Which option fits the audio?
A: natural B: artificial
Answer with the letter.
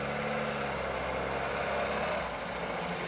A